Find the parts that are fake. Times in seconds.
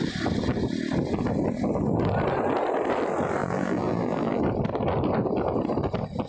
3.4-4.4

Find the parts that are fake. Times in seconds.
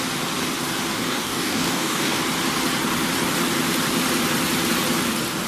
0.9-2.2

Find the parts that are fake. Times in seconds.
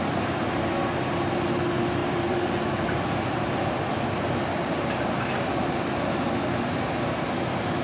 2.0-3.7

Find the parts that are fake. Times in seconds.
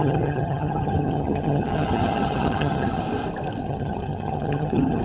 0.0-3.0; 3.6-5.0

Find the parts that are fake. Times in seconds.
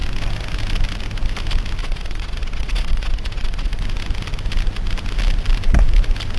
1.8-3.8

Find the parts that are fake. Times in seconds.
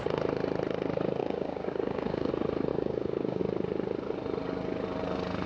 1.2-2.3; 2.7-3.4